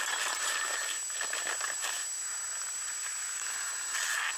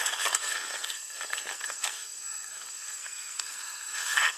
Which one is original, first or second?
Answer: first